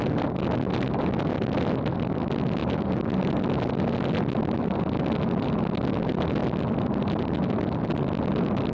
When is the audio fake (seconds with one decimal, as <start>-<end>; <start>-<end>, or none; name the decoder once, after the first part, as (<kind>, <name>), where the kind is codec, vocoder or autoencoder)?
none